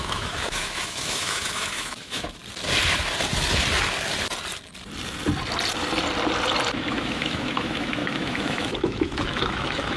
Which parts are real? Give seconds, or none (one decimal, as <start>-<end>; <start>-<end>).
2.4-6.9